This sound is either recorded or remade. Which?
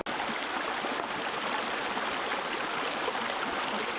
recorded